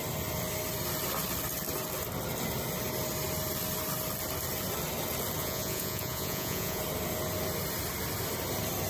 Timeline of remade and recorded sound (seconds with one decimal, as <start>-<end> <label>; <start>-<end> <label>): 0.0-5.4 recorded; 5.4-6.8 remade; 6.8-8.9 recorded